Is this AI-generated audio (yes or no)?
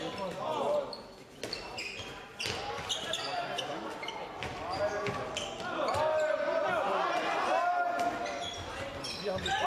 no